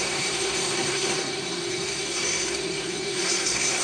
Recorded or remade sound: remade